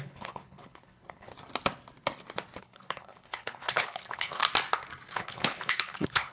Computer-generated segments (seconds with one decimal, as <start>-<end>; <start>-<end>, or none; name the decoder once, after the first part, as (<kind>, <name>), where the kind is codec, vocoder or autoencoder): 0.0-1.3 (codec, HILCodec); 2.6-4.4; 5.1-6.3